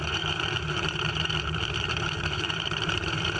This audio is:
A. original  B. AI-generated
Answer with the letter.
B